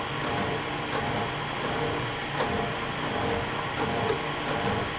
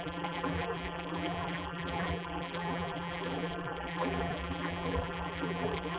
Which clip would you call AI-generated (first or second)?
second